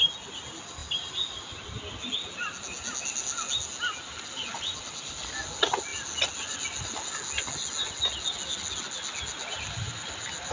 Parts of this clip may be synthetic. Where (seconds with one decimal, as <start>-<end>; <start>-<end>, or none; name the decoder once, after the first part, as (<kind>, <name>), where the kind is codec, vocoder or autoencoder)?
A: none